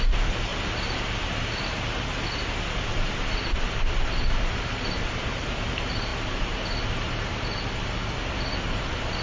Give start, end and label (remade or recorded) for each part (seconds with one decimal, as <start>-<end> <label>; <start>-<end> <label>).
0.0-0.5 remade; 0.5-1.4 recorded; 1.4-6.1 remade; 6.1-6.9 recorded; 6.9-9.2 remade